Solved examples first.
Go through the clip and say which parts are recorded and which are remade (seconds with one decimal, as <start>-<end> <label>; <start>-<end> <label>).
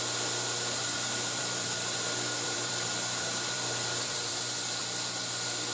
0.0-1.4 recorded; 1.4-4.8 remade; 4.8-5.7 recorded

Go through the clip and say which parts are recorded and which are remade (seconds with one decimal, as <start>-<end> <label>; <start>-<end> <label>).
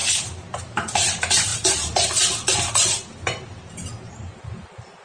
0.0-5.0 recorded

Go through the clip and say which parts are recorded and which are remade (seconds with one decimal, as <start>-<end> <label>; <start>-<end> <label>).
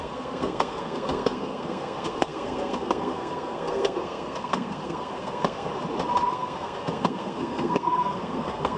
0.0-5.7 remade; 5.7-6.3 recorded; 6.3-8.8 remade